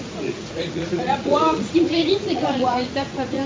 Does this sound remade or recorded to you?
remade